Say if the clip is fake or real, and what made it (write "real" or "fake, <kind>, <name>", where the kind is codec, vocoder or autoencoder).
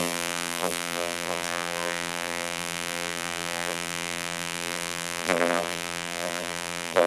fake, vocoder, BigVGAN v2